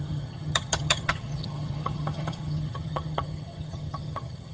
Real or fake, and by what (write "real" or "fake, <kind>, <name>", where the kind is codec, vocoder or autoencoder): fake, vocoder, HiFi-GAN